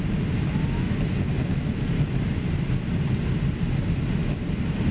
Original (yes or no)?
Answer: yes